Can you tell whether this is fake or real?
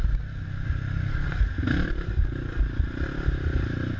real